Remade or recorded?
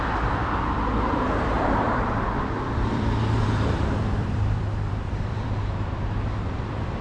remade